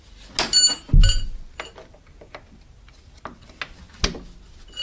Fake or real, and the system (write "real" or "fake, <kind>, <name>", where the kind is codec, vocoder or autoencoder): real